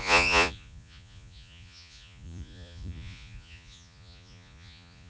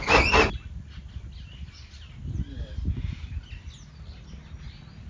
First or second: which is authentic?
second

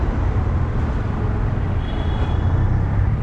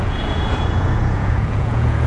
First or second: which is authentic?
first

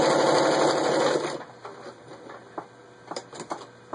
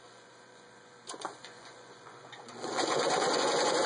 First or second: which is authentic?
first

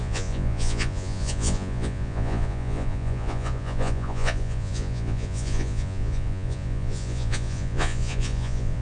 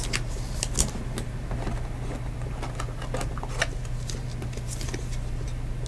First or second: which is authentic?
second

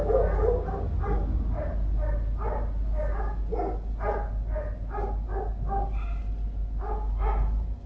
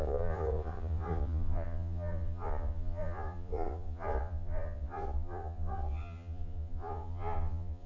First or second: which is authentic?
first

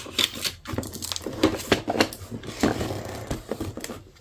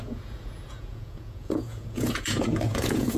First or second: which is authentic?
first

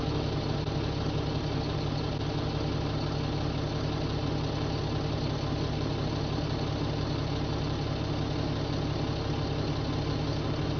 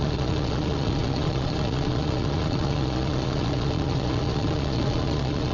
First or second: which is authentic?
first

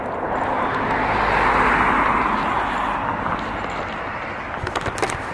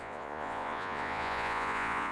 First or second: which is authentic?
first